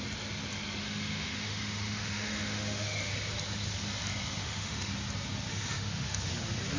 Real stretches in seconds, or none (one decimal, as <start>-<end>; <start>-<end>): 0.0-0.8; 3.1-4.4; 4.9-5.5; 6.3-6.8